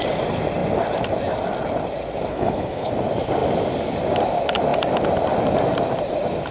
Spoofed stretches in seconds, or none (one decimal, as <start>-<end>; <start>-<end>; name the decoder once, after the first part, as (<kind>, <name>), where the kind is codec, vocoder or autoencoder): 2.3-2.9 (codec, HILCodec)